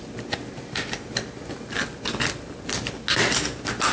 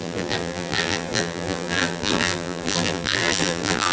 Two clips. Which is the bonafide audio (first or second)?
first